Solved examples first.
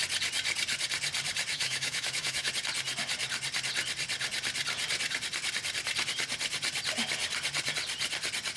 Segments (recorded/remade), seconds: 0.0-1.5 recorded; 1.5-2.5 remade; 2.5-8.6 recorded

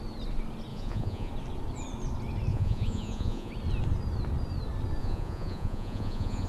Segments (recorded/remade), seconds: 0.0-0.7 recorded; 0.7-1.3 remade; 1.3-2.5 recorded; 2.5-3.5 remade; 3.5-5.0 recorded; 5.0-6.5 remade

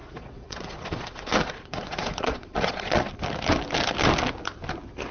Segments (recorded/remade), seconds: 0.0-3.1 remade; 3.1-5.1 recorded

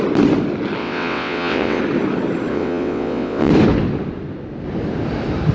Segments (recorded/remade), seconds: 0.0-0.8 recorded; 0.8-1.8 remade; 1.8-2.5 recorded; 2.5-3.5 remade; 3.5-5.5 recorded

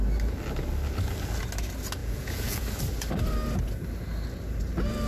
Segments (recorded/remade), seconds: 0.0-2.0 recorded; 2.0-2.6 remade; 2.6-5.1 recorded